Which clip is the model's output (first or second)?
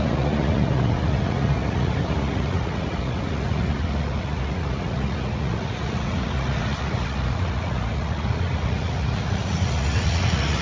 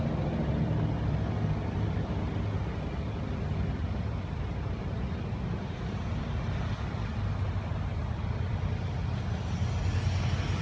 first